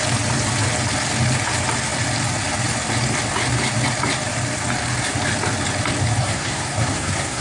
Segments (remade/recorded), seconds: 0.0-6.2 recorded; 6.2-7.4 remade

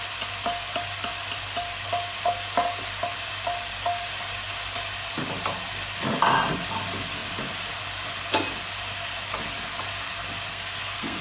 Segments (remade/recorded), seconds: 0.0-10.5 recorded; 10.5-11.2 remade

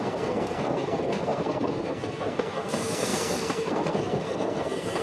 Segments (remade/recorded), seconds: 0.0-5.0 remade

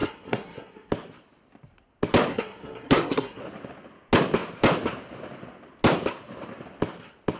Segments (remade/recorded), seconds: 0.0-0.9 remade; 0.9-2.3 recorded; 2.3-3.4 remade; 3.4-7.4 recorded

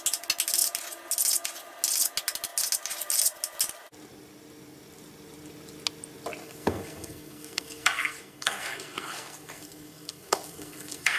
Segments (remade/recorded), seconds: 0.0-6.4 recorded; 6.4-11.2 remade